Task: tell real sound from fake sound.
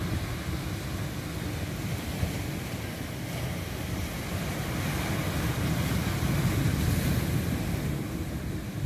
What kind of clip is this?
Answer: real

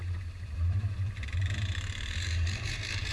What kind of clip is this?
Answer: fake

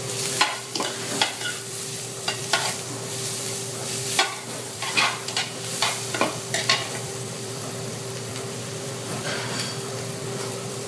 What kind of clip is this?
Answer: fake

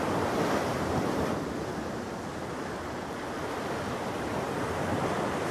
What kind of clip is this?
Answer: real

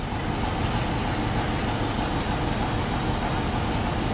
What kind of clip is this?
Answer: real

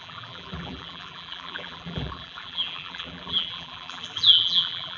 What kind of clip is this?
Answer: fake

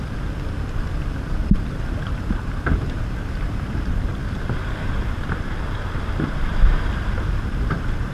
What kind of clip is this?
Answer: fake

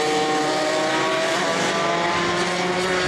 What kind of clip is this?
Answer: real